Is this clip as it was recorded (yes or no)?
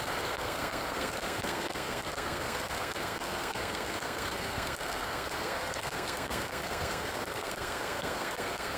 no